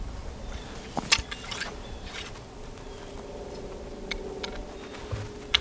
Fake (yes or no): no